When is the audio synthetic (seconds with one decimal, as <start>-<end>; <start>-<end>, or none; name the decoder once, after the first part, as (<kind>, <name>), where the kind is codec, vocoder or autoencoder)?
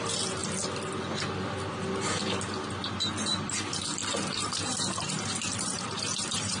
4.0-6.6 (vocoder, BigVGAN v2)